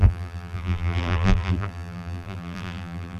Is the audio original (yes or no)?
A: no